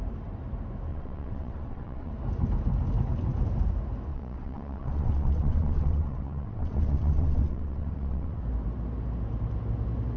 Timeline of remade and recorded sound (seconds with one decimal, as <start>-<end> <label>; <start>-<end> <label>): 0.0-0.9 recorded; 0.9-2.1 remade; 2.1-4.1 recorded; 4.1-8.4 remade; 8.4-10.2 recorded